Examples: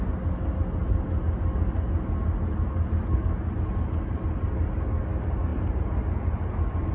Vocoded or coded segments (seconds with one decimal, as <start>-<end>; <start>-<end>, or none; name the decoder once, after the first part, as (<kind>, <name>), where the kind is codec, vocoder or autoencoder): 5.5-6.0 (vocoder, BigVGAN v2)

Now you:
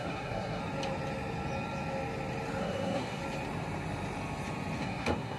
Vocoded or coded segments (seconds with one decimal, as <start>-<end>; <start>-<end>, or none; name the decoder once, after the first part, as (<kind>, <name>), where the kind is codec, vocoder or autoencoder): 0.0-0.6 (codec, SNAC); 2.6-3.2; 4.8-5.4

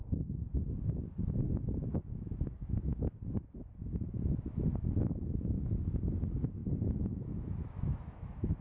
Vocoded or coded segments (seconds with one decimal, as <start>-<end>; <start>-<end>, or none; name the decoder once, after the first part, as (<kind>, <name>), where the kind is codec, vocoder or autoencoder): 1.9-2.9 (autoencoder, DAC-VAE); 3.8-5.0; 6.6-8.6

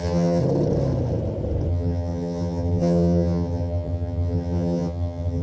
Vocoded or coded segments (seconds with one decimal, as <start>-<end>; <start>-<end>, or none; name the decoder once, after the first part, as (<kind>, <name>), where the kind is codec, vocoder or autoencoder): 0.0-0.4 (vocoder, HiFi-GAN); 1.7-5.4

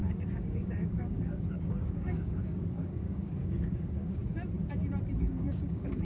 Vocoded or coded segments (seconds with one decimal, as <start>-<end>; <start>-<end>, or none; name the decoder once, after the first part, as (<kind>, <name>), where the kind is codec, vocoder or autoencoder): 0.0-4.2 (codec, DAC); 5.2-6.0